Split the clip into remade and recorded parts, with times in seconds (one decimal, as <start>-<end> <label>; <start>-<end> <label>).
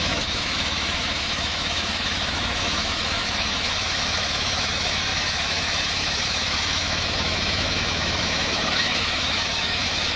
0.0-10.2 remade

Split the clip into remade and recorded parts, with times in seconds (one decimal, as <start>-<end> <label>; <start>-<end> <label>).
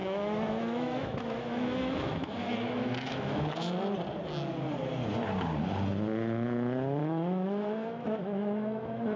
0.0-3.5 remade; 3.5-7.0 recorded; 7.0-9.2 remade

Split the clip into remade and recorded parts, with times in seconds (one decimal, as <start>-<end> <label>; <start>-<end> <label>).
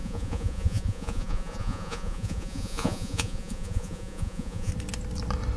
0.0-4.7 remade; 4.7-5.6 recorded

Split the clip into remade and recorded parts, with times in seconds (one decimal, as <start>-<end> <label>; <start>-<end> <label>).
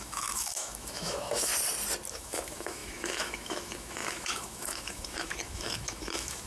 0.0-1.5 remade; 1.5-2.1 recorded; 2.1-6.5 remade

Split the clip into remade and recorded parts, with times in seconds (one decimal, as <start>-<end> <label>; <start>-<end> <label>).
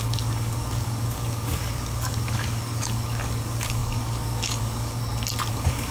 0.0-5.0 remade; 5.0-5.5 recorded; 5.5-5.9 remade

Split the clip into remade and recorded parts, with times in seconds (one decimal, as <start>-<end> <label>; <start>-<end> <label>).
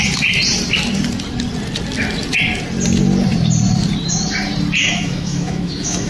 0.0-4.8 recorded; 4.8-6.1 remade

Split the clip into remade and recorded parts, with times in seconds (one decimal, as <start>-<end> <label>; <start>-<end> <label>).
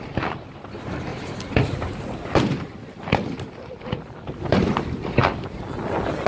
0.0-6.3 recorded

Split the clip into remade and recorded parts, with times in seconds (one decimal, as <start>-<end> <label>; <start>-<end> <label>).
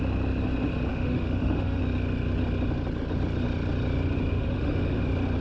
0.0-0.9 recorded; 0.9-1.8 remade; 1.8-4.3 recorded; 4.3-5.0 remade; 5.0-5.4 recorded